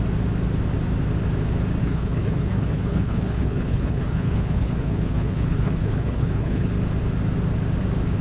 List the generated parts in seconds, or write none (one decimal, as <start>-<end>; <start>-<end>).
1.8-6.7